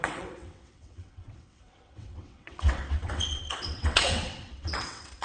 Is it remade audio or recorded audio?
remade